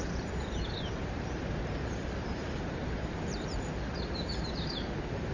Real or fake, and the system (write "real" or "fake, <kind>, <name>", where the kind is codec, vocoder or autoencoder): fake, vocoder, BigVGAN v2